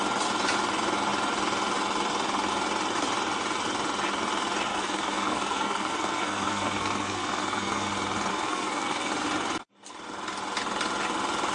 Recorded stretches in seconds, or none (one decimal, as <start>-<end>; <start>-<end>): 0.0-4.7; 7.9-8.3; 9.1-11.5